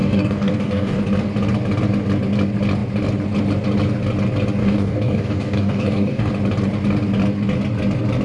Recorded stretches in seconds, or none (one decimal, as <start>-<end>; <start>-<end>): 1.0-4.6; 6.3-8.2